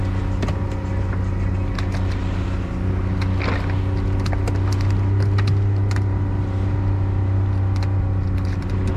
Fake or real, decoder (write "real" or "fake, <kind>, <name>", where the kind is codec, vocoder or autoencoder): real